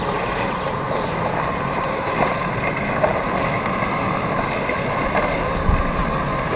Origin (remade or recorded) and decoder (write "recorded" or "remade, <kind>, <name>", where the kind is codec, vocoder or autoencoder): recorded